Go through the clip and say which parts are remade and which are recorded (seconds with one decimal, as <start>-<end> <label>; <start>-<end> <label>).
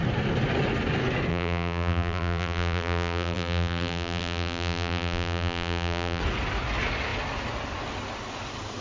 0.0-1.3 recorded; 1.3-6.2 remade; 6.2-8.8 recorded